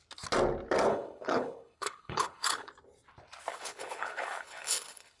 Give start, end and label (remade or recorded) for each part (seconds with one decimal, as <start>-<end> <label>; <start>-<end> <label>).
0.0-0.9 recorded; 0.9-2.7 remade; 2.7-3.5 recorded; 3.5-5.2 remade